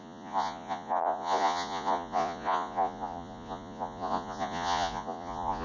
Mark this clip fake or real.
fake